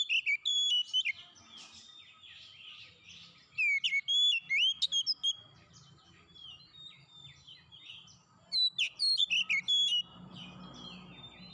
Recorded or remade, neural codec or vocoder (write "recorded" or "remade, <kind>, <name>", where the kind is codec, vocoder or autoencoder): recorded